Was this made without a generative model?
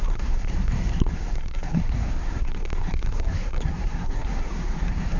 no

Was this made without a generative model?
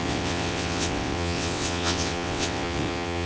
no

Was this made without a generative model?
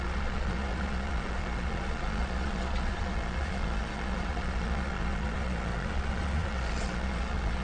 no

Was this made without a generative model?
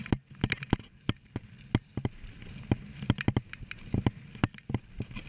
yes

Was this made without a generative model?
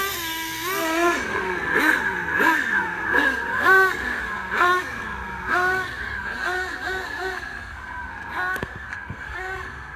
no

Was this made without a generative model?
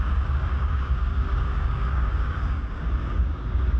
no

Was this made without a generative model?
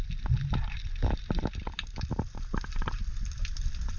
yes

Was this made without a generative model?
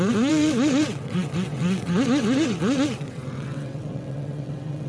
no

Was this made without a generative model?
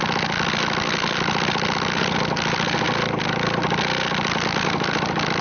yes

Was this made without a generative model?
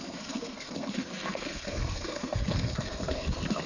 no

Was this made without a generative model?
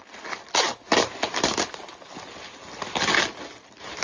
yes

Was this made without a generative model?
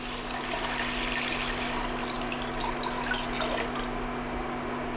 yes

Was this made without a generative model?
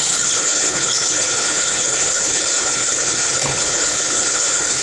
no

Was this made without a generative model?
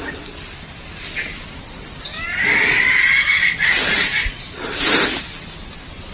yes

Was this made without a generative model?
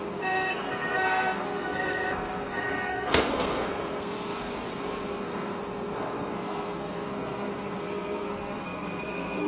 no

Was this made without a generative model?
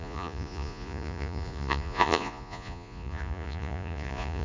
no